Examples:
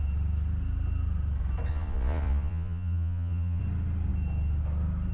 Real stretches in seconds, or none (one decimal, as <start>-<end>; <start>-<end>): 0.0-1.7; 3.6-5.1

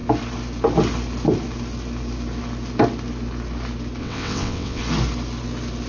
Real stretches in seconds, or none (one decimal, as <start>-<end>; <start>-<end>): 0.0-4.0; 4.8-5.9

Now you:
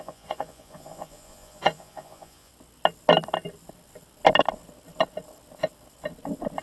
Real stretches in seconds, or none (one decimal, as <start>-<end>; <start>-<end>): 2.5-6.6

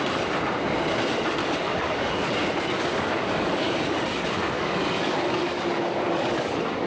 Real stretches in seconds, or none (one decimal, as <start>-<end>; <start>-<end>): 0.0-1.4; 2.3-2.7

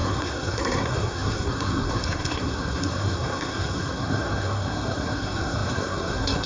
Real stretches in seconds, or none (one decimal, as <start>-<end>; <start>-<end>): none

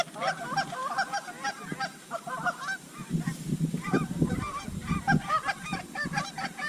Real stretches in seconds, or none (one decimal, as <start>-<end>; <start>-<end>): 0.8-1.5

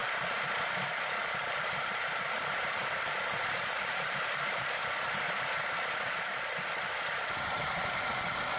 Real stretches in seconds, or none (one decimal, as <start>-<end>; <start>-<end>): 0.0-0.9; 4.8-7.4

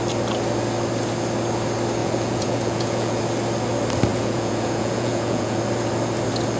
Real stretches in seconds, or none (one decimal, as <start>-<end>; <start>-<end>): 0.0-2.0; 3.2-4.1; 5.6-6.6